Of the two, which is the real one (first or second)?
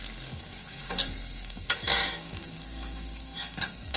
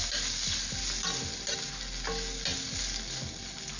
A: second